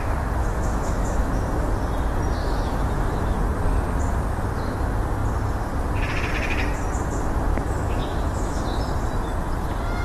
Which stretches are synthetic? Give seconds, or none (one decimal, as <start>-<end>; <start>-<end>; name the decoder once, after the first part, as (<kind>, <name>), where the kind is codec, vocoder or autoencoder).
0.4-1.7 (autoencoder, DAC-VAE); 2.4-3.4; 7.5-8.6